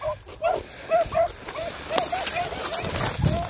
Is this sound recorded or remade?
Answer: recorded